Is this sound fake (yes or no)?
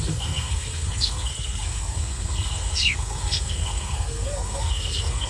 yes